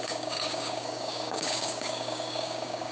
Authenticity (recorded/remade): remade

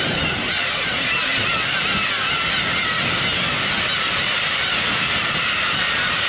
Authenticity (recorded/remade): remade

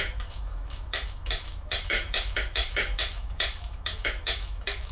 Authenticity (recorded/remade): remade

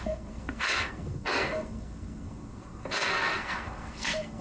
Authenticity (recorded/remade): remade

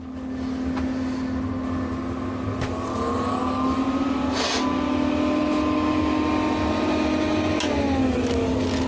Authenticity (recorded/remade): recorded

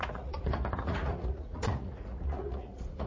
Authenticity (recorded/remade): remade